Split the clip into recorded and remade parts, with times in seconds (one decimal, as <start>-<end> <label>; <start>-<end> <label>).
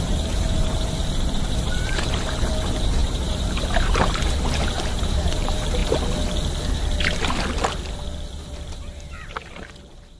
0.0-5.8 remade; 5.8-8.7 recorded; 8.7-10.2 remade